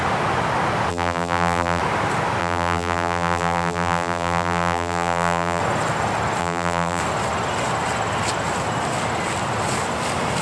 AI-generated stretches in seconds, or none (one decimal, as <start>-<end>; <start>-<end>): 0.9-1.8; 2.4-5.6; 6.4-7.0